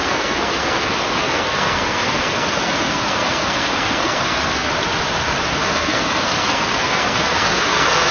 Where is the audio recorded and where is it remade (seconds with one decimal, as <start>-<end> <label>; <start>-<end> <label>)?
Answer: 0.0-4.7 remade; 4.7-5.5 recorded; 5.5-8.1 remade